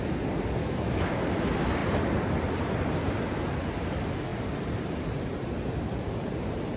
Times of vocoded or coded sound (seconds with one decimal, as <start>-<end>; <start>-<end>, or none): 0.6-1.3